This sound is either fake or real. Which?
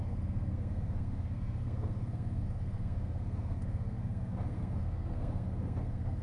fake